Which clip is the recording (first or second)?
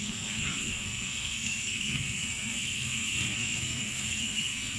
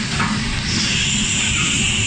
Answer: second